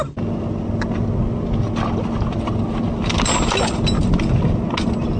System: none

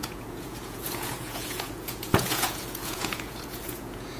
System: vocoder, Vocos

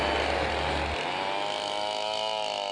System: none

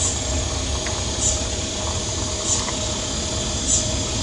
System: none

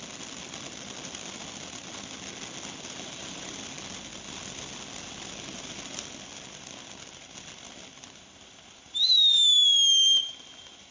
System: none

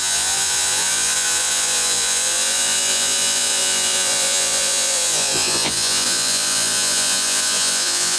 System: vocoder, Vocos